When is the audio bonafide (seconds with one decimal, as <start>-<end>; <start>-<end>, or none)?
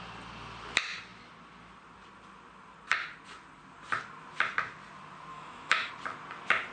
0.0-5.3; 5.9-6.7